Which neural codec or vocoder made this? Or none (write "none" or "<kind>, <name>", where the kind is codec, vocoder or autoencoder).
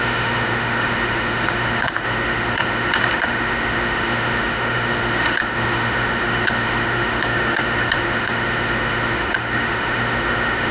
autoencoder, DAC-VAE